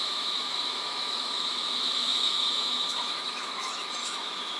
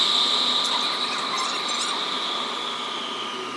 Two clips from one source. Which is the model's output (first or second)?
first